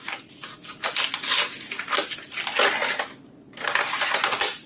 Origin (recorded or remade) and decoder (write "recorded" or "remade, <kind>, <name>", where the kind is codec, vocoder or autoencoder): recorded